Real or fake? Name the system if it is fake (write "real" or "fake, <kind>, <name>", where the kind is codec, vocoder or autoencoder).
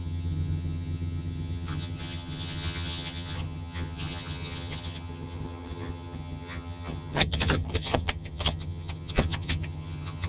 fake, vocoder, HiFi-GAN